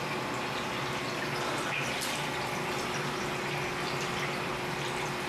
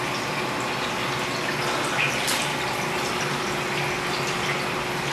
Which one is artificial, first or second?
second